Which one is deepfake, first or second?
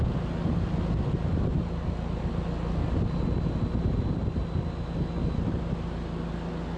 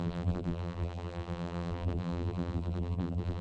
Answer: second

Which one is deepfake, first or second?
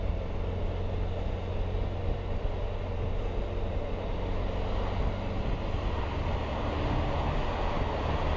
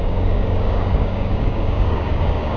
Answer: second